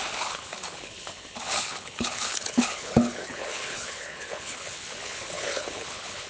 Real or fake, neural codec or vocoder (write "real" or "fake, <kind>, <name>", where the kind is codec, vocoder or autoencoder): fake, codec, HILCodec